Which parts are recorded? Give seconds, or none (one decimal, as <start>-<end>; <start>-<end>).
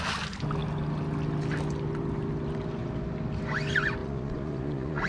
0.0-4.0